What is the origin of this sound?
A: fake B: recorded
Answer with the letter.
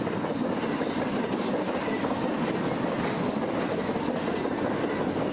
B